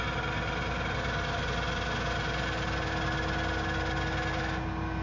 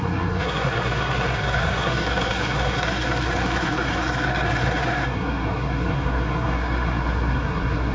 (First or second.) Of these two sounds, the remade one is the second